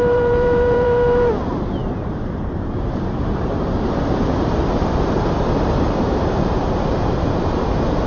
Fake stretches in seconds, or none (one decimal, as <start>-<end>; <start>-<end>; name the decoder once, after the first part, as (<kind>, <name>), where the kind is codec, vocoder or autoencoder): 0.0-8.1 (vocoder, BigVGAN v2)